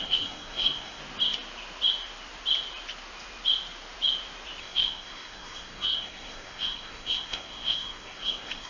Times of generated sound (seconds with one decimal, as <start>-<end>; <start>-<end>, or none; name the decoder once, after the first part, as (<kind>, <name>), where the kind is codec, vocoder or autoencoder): 0.0-1.0 (codec, SNAC); 4.6-8.7